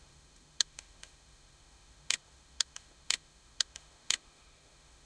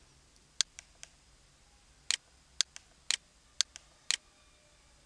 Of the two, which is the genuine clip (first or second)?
second